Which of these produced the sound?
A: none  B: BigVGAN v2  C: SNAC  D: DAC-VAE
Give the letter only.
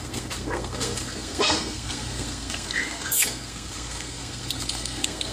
C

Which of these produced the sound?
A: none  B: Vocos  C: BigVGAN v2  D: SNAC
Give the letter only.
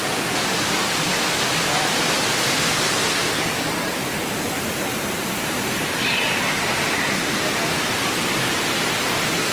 A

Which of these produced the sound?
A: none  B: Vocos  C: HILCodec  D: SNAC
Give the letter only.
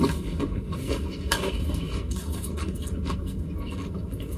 D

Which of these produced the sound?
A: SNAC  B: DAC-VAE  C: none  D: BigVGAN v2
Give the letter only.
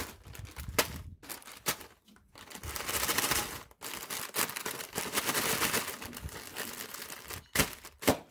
C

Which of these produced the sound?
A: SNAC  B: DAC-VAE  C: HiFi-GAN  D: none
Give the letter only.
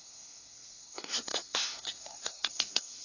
A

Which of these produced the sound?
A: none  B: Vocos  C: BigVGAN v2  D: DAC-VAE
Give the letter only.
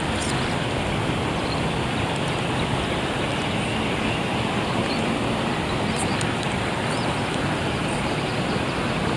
C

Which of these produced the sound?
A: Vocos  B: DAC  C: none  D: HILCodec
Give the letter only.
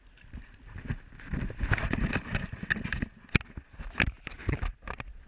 C